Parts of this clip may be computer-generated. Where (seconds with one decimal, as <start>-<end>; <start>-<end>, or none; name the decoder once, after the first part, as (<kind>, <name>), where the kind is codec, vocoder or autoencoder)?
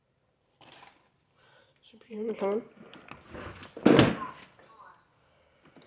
1.8-2.4 (vocoder, BigVGAN v2)